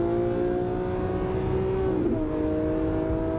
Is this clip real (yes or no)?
yes